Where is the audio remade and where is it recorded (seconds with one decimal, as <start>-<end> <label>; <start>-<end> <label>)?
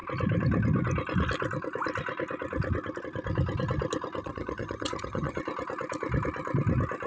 0.0-4.2 recorded; 4.2-5.4 remade; 5.4-7.1 recorded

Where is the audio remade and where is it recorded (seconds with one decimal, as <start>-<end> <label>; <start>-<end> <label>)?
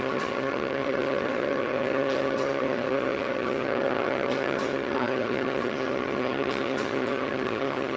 0.0-8.0 remade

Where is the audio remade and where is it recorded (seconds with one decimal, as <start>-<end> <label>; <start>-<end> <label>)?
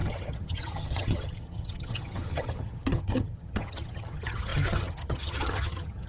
0.0-6.1 remade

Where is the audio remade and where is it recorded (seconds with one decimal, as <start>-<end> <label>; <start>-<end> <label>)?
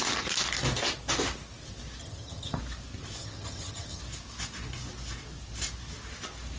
0.0-2.0 recorded; 2.0-2.6 remade; 2.6-3.2 recorded; 3.2-4.0 remade; 4.0-6.6 recorded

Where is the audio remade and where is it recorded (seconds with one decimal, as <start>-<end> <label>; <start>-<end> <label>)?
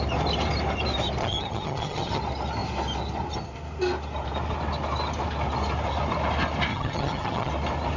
0.0-1.2 recorded; 1.2-2.2 remade; 2.2-6.7 recorded; 6.7-7.5 remade; 7.5-8.0 recorded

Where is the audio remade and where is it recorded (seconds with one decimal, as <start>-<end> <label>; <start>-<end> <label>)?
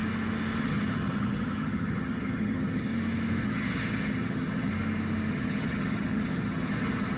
0.0-0.6 recorded; 0.6-2.9 remade; 2.9-3.4 recorded; 3.4-4.7 remade; 4.7-5.3 recorded; 5.3-7.2 remade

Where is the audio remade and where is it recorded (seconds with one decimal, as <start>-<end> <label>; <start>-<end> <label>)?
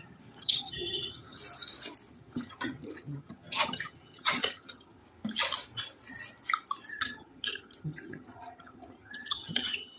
0.0-1.4 remade; 1.4-2.1 recorded; 2.1-5.0 remade; 5.0-6.9 recorded; 6.9-10.0 remade